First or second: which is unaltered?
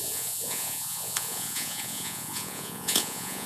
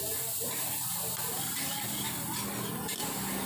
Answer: second